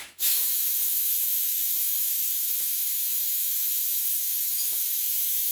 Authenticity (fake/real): fake